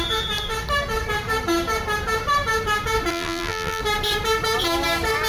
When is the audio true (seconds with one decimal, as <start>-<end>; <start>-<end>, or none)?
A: 0.0-3.1; 3.8-5.3